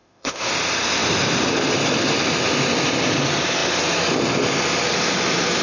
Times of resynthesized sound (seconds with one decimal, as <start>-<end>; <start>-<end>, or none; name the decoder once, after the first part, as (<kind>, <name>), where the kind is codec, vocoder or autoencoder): 0.0-0.5 (autoencoder, DAC-VAE)